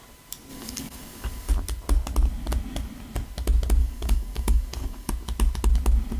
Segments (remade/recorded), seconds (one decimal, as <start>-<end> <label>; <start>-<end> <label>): 0.0-0.5 recorded; 0.5-1.5 remade; 1.5-3.8 recorded; 3.8-5.1 remade; 5.1-6.2 recorded